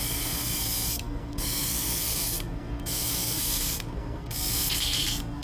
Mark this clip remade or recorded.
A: remade